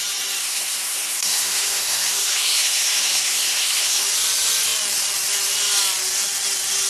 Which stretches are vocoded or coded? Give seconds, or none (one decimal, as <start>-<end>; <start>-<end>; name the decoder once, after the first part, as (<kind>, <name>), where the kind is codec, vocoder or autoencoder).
0.4-4.0 (codec, SNAC)